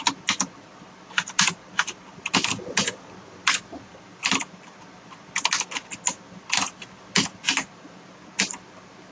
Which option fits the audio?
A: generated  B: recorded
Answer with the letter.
B